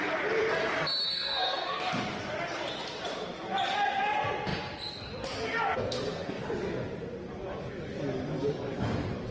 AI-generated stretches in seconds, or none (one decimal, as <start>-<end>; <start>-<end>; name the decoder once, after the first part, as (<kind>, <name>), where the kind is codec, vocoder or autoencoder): 1.1-1.9 (codec, SNAC); 5.5-6.4